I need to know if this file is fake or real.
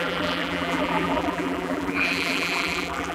fake